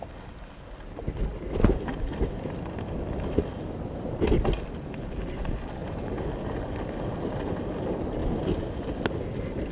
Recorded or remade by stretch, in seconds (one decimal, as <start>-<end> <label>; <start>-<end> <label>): 0.0-5.8 recorded; 5.8-6.3 remade; 6.3-8.2 recorded; 8.2-8.7 remade; 8.7-9.7 recorded